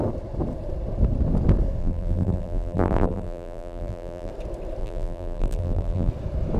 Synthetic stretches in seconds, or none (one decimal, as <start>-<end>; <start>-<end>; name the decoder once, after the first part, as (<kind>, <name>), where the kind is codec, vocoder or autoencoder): 1.8-4.3 (vocoder, BigVGAN v2); 4.8-6.1